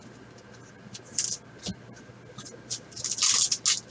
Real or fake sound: real